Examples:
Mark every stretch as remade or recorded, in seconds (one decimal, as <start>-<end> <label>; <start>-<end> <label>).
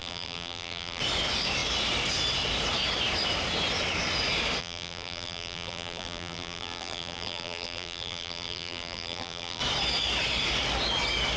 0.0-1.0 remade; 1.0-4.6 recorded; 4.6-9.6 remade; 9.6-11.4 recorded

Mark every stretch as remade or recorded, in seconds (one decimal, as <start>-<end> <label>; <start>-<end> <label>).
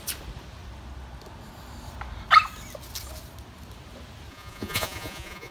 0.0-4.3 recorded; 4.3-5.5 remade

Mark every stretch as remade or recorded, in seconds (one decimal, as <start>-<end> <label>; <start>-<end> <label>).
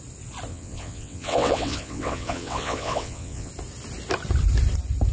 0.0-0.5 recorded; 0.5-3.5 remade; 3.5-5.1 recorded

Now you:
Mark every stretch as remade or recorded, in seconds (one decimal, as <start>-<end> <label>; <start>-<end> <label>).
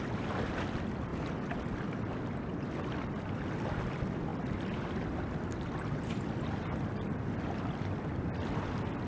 0.0-9.1 recorded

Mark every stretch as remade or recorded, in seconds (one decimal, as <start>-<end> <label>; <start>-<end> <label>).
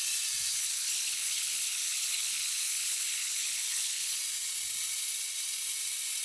0.0-0.5 recorded; 0.5-4.2 remade; 4.2-6.2 recorded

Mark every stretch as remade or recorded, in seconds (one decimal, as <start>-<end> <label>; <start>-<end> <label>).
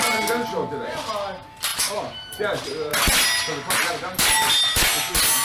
0.0-1.7 recorded; 1.7-2.4 remade; 2.4-5.4 recorded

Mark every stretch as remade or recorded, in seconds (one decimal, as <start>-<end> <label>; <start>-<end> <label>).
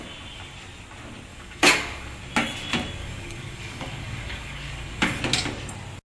0.0-1.3 recorded; 1.3-2.2 remade; 2.2-3.0 recorded; 3.0-5.2 remade; 5.2-6.1 recorded